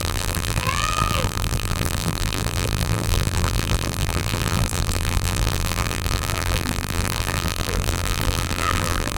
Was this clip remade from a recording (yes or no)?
yes